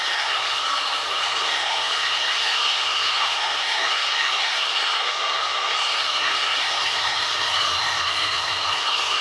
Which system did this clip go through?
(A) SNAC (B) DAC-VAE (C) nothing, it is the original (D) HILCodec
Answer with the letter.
A